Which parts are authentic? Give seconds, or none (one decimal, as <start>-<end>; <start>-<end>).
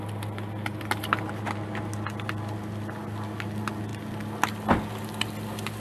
0.0-5.8